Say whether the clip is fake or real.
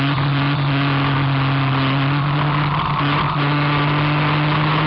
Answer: real